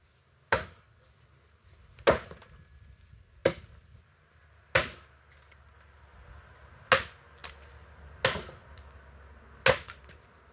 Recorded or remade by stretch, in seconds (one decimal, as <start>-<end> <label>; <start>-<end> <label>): 0.0-10.5 recorded